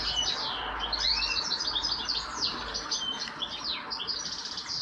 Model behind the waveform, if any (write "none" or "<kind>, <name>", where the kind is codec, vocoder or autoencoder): none